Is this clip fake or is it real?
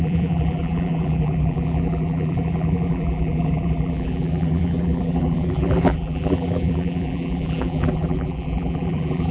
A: fake